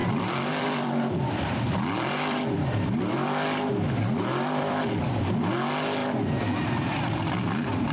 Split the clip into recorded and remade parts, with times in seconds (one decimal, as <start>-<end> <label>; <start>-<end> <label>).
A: 0.0-3.7 remade; 3.7-4.3 recorded; 4.3-5.5 remade; 5.5-6.0 recorded; 6.0-6.7 remade; 6.7-7.9 recorded